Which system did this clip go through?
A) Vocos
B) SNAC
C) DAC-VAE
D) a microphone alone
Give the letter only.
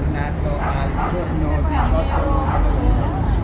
D